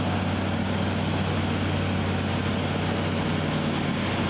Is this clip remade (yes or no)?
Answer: no